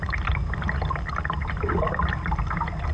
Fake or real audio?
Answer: real